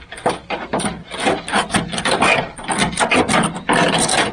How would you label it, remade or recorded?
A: recorded